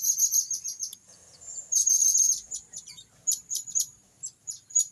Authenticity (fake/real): fake